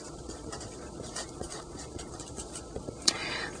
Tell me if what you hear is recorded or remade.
remade